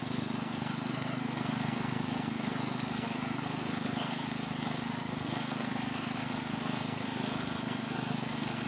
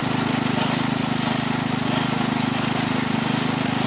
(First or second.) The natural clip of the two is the second